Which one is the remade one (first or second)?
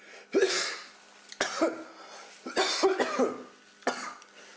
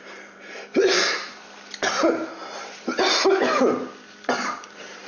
second